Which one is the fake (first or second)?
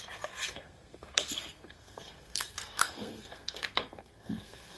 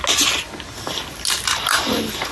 first